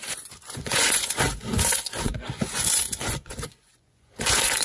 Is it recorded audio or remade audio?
remade